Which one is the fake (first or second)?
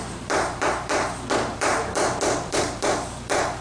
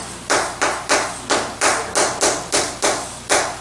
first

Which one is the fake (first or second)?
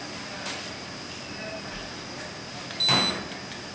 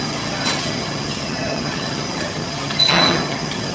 second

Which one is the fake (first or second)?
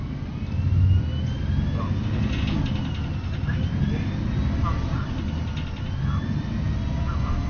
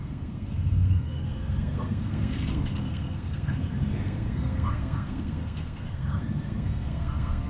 second